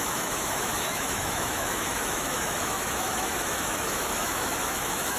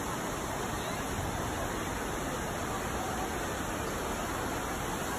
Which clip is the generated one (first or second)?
first